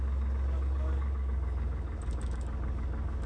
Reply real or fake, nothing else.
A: fake